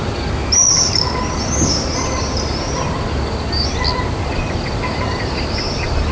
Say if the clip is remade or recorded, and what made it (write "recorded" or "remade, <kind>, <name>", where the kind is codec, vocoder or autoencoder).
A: recorded